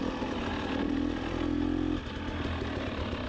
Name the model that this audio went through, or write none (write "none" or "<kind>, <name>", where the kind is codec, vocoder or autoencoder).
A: none